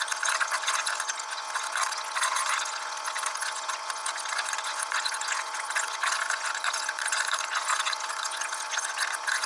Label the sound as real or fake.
fake